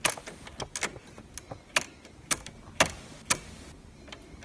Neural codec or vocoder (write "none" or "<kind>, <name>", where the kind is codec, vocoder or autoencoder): none